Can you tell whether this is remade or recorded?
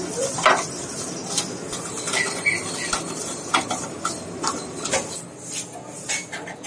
recorded